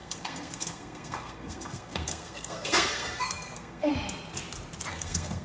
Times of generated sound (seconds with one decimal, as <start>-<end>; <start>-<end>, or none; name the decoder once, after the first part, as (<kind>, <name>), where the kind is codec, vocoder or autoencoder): 0.0-3.9 (codec, SNAC); 4.9-5.4